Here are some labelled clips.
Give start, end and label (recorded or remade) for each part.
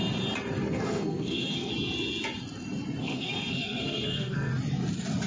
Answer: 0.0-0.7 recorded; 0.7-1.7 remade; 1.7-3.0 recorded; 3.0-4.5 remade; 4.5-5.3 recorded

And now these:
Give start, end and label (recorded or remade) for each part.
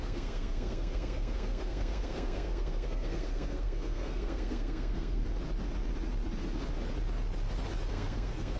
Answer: 0.0-5.2 remade; 5.2-7.9 recorded; 7.9-8.6 remade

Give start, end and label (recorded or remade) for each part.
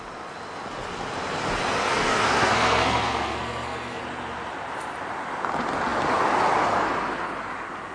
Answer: 0.0-1.8 recorded; 1.8-4.0 remade; 4.0-7.9 recorded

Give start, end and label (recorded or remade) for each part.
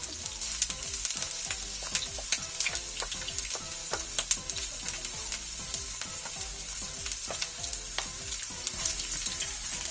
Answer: 0.0-9.9 recorded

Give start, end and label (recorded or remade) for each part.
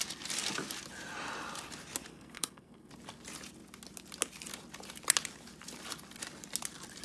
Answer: 0.0-2.1 recorded; 2.1-2.9 remade; 2.9-7.0 recorded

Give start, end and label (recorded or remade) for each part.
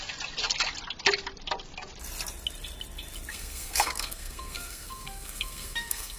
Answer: 0.0-3.3 recorded; 3.3-6.2 remade